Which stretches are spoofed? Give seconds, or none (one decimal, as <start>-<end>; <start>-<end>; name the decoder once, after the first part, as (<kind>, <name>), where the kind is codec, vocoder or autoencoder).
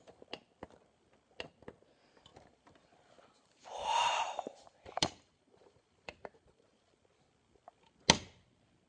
2.3-6.9 (vocoder, BigVGAN v2)